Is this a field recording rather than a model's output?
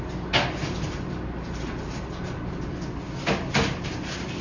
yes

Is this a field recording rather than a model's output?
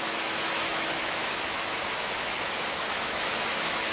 no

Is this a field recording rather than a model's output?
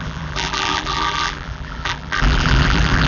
no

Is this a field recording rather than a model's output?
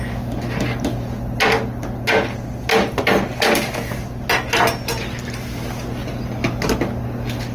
yes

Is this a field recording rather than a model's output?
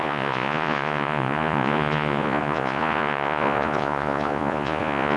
no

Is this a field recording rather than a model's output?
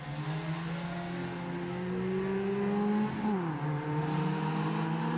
yes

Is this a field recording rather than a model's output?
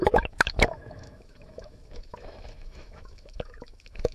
no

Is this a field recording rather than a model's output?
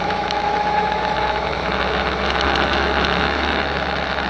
no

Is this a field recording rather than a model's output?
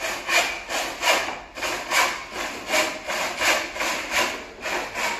yes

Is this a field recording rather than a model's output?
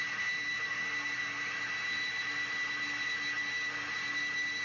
yes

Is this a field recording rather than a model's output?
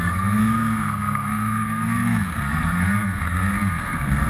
no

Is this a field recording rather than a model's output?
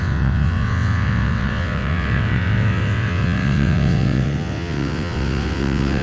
no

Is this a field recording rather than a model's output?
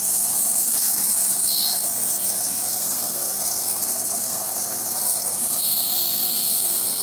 no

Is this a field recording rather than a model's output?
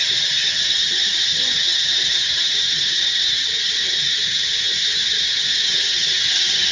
no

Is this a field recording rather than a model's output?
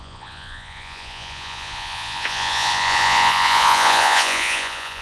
no